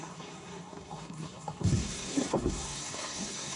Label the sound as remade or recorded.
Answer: remade